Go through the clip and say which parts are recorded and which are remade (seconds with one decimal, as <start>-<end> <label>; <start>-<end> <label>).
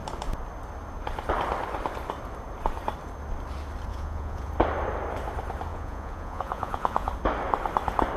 0.0-3.9 recorded; 3.9-4.5 remade; 4.5-5.7 recorded; 5.7-7.1 remade; 7.1-8.2 recorded